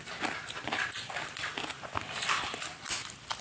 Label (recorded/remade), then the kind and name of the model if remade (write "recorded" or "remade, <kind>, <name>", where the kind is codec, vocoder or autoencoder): recorded